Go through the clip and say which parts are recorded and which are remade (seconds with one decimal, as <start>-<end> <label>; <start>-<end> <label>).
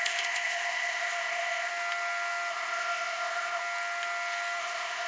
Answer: 0.0-1.7 remade; 1.7-2.5 recorded; 2.5-3.6 remade; 3.6-4.6 recorded; 4.6-5.1 remade